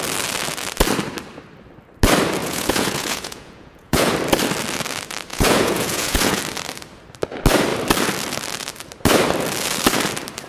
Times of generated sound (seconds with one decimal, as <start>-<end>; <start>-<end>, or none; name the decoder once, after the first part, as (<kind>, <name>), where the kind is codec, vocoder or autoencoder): 2.4-4.1 (vocoder, Vocos); 5.3-6.4

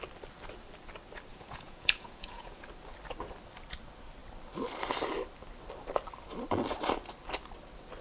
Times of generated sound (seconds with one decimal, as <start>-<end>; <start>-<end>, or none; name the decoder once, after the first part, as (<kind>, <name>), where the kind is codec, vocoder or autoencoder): 1.3-2.6 (vocoder, Vocos)

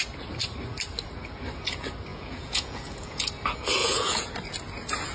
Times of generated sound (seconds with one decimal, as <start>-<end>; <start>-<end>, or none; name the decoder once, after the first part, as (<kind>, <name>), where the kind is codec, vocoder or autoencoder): 2.1-3.3 (vocoder, Vocos); 3.8-4.3

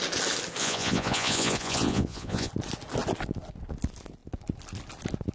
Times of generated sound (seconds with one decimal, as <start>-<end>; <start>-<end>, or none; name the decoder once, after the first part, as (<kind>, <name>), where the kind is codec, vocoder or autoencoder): 0.6-2.5 (vocoder, Vocos)

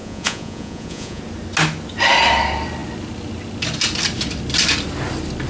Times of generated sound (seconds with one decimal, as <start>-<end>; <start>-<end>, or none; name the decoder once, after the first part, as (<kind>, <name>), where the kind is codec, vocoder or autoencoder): 0.0-1.2 (vocoder, Vocos)

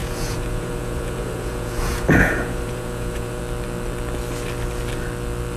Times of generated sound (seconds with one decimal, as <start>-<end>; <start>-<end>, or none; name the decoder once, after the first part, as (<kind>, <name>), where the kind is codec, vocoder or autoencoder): 0.0-3.4 (vocoder, Vocos)

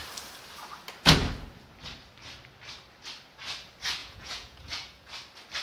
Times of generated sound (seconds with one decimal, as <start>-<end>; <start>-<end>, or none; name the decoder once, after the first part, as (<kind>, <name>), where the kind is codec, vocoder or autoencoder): 4.0-5.1 (vocoder, Vocos)

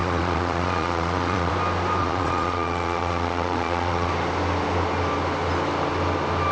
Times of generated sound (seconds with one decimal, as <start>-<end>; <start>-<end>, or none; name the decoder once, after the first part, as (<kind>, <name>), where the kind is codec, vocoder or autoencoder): 0.0-1.5 (vocoder, Vocos); 2.0-4.1